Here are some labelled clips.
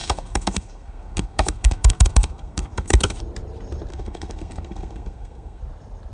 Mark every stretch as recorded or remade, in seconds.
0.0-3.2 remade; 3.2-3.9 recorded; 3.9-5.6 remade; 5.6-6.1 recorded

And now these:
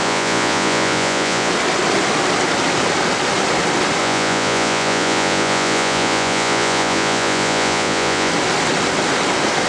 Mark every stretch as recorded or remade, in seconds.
0.0-1.5 remade; 1.5-4.0 recorded; 4.0-8.3 remade; 8.3-9.7 recorded